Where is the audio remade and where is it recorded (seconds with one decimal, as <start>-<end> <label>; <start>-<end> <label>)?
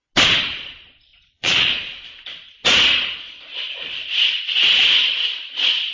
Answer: 0.0-1.1 recorded; 1.1-1.8 remade; 1.8-5.9 recorded